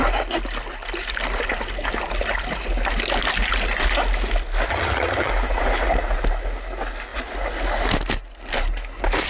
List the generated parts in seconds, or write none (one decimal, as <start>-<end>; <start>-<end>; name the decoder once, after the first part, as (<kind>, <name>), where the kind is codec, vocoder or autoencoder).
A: 4.7-5.3 (vocoder, HiFi-GAN)